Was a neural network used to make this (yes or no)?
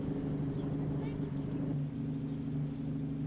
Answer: no